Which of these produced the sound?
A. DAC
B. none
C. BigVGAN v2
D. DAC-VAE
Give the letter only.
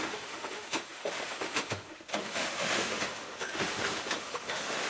D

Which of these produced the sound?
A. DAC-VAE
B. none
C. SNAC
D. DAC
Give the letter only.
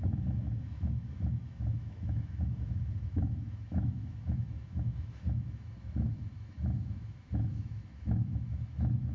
A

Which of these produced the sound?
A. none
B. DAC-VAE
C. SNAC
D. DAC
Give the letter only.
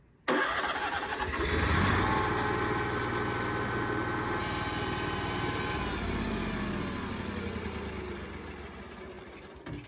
A